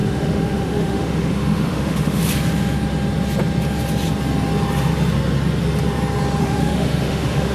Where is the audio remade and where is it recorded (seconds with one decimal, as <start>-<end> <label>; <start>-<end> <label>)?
0.0-2.2 remade; 2.2-6.4 recorded; 6.4-7.5 remade